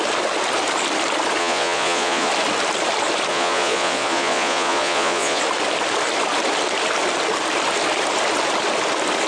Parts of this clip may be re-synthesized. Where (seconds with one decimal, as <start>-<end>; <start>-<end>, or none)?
1.4-2.3; 3.3-5.4

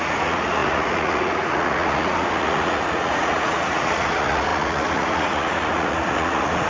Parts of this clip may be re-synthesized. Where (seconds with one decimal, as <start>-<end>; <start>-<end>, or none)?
0.0-6.7

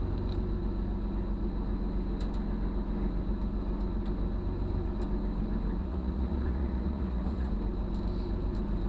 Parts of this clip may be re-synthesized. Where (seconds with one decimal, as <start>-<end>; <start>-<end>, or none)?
5.8-7.5

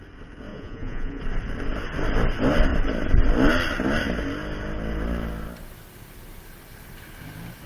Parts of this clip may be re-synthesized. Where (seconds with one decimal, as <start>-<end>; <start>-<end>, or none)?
0.5-1.2

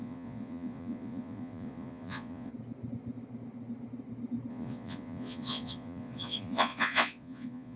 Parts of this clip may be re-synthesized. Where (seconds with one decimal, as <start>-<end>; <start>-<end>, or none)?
0.0-2.5; 4.5-7.8